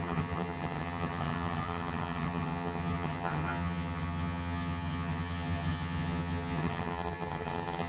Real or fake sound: fake